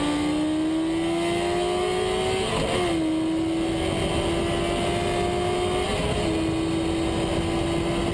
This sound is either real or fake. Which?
real